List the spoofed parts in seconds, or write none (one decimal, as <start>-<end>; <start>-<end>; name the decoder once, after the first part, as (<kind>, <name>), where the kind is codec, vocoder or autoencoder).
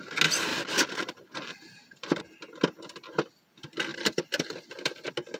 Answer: 0.5-2.2 (vocoder, BigVGAN v2); 3.9-4.7